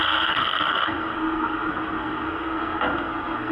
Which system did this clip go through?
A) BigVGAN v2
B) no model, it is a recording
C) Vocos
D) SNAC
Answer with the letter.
D